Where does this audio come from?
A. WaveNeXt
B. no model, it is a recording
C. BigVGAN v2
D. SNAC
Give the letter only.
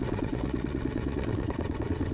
A